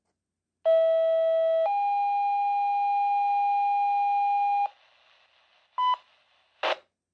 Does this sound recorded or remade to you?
recorded